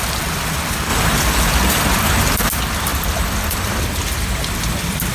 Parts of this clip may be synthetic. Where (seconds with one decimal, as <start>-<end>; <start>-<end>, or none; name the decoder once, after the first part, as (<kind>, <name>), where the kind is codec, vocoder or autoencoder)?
0.9-2.5 (vocoder, BigVGAN v2); 2.9-3.8